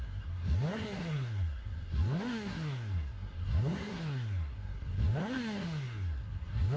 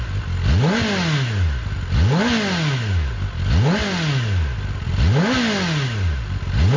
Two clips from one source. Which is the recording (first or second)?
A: second